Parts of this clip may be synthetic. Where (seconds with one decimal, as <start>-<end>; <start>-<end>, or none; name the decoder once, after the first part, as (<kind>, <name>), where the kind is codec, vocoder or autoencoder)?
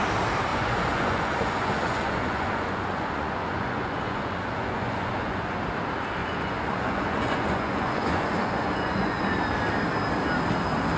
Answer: 0.5-5.6 (vocoder, Vocos); 6.2-9.2